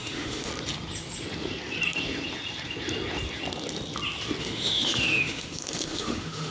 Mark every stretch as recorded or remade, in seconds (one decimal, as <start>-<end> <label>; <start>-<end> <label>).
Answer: 0.0-0.5 remade; 0.5-4.4 recorded; 4.4-6.5 remade